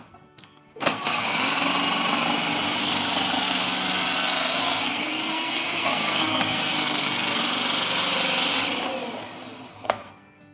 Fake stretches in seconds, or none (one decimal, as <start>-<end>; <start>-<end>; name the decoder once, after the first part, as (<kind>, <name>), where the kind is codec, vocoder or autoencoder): 0.0-1.6 (codec, SNAC); 2.8-7.4; 9.7-10.5